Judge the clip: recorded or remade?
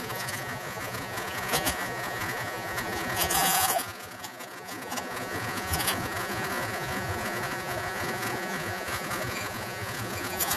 remade